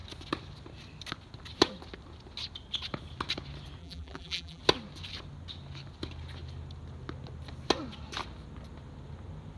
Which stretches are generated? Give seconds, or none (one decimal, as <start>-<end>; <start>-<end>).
3.8-4.6